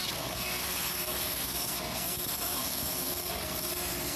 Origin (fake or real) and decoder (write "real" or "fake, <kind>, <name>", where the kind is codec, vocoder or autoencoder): fake, codec, SNAC